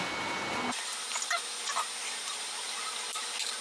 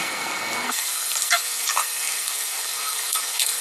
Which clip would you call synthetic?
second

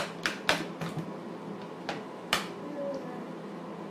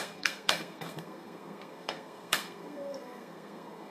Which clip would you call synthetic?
second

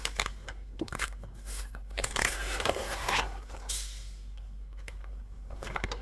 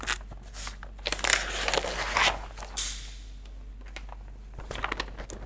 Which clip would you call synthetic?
first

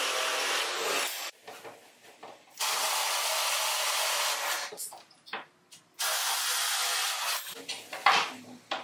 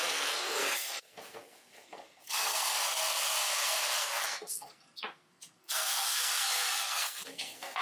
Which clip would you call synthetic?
second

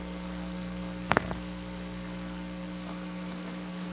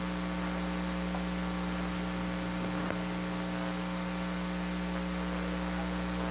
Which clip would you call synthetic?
first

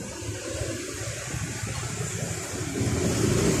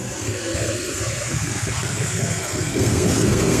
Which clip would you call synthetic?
second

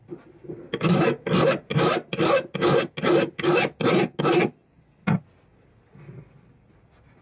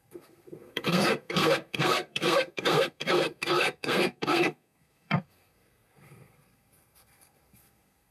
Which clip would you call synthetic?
second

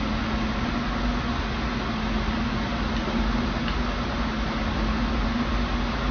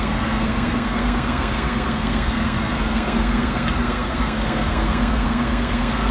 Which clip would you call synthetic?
second